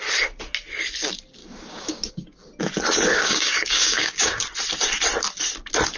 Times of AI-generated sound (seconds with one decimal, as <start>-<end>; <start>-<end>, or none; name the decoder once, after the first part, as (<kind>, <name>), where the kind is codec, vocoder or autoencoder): 1.4-2.1 (codec, DAC); 3.1-4.4

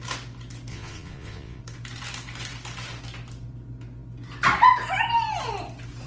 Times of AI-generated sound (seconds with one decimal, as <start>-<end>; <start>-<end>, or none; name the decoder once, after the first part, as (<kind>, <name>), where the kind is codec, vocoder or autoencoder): 0.7-1.6 (vocoder, Vocos)

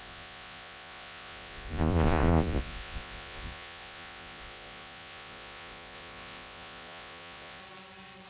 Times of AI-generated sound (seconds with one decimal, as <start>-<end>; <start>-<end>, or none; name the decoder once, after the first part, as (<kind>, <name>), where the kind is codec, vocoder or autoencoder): 0.0-7.6 (vocoder, Vocos)

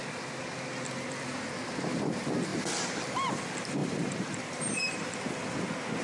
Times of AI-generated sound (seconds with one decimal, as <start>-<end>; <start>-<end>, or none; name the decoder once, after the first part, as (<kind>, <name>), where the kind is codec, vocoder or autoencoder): 2.5-3.3 (vocoder, BigVGAN v2); 3.8-5.0

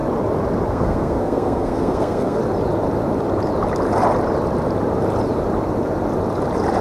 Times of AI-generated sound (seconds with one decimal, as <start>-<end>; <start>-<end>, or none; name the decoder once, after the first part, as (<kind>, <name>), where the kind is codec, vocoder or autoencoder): 0.7-2.4 (codec, SNAC)

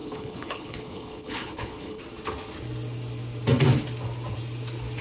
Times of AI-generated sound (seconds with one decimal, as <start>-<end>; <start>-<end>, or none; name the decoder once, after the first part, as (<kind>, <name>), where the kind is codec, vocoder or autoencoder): 0.0-2.0 (codec, HILCodec)

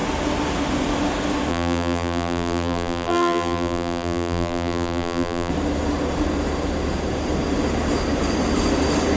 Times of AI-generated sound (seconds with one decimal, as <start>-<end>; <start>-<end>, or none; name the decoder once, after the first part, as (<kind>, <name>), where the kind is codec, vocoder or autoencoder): 1.5-5.5 (vocoder, BigVGAN v2)

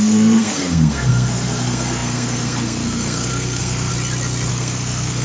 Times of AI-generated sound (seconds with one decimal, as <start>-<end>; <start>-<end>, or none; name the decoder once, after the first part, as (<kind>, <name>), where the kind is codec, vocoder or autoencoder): 0.0-3.9 (codec, SNAC); 4.5-5.2